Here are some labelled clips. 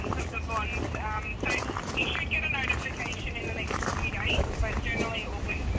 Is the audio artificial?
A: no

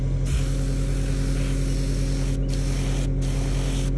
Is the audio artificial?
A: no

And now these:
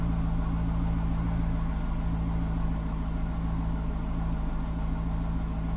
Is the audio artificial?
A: no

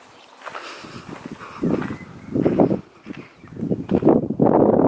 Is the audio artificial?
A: no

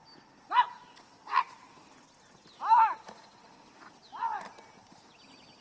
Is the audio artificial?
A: no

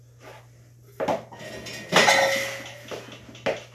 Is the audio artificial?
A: no